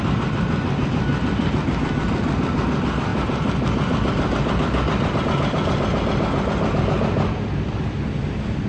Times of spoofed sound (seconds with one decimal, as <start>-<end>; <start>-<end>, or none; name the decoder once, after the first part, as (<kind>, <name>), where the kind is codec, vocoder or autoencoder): 3.1-5.2 (vocoder, BigVGAN v2)